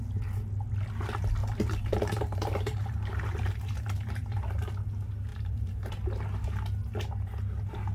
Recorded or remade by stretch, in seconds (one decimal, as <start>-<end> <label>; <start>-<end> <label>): 0.0-1.4 recorded; 1.4-4.7 remade; 4.7-5.3 recorded; 5.3-5.9 remade; 5.9-7.9 recorded